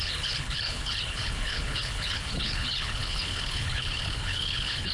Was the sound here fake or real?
fake